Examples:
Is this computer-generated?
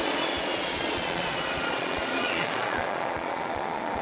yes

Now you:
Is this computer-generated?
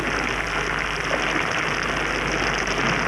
no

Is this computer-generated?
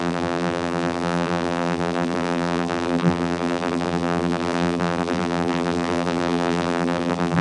yes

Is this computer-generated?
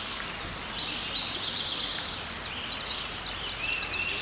no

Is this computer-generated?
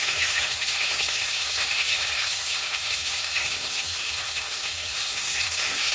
yes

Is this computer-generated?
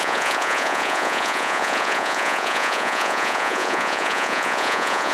yes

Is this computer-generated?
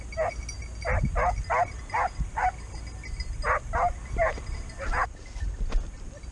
no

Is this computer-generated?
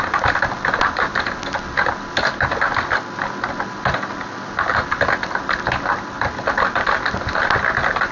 no